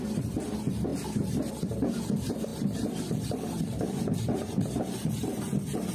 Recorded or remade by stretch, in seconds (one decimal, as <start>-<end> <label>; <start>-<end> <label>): 0.0-5.9 remade